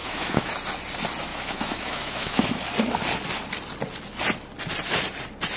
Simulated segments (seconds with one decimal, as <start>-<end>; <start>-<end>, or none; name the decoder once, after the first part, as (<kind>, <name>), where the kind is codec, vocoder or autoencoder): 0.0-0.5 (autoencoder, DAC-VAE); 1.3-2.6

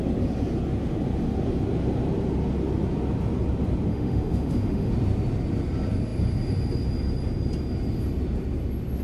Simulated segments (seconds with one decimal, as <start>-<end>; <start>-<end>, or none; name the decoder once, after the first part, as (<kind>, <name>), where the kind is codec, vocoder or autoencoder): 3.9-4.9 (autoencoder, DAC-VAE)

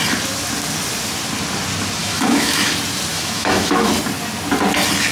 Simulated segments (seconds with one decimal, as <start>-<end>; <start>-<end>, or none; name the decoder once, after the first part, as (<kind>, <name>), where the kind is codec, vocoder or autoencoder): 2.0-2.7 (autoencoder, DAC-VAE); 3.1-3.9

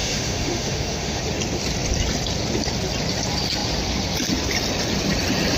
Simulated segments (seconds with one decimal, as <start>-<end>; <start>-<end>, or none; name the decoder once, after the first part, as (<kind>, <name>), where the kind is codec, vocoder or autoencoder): 0.0-1.2 (autoencoder, DAC-VAE)

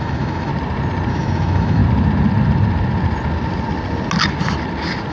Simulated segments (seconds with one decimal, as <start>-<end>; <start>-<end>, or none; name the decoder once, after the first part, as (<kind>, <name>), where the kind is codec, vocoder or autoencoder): 0.0-0.5 (autoencoder, DAC-VAE); 1.1-1.8

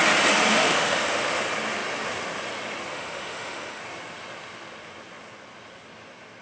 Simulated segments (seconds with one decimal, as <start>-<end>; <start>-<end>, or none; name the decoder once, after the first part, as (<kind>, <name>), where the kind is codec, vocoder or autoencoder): 0.5-1.4 (autoencoder, DAC-VAE); 2.9-3.8